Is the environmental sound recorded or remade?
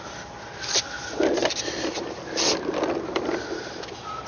recorded